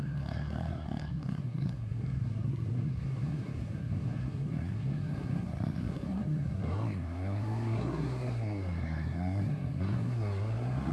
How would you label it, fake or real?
fake